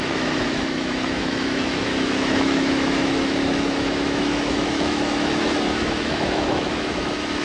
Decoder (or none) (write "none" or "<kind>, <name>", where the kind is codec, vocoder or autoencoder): autoencoder, DAC-VAE